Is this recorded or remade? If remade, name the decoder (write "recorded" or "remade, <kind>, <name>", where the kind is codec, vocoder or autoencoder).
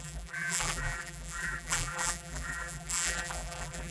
remade, vocoder, BigVGAN v2